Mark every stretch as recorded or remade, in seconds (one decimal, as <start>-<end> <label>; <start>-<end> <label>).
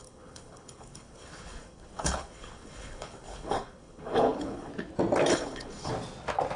0.0-4.7 remade; 4.7-5.3 recorded; 5.3-5.9 remade; 5.9-6.6 recorded